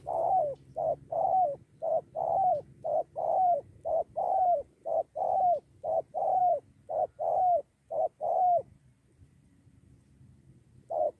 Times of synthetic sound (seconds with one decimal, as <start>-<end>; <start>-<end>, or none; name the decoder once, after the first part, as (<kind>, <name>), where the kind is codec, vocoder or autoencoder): 0.0-6.4 (vocoder, BigVGAN v2); 7.6-11.2